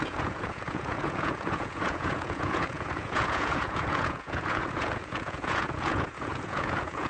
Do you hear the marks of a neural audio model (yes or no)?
yes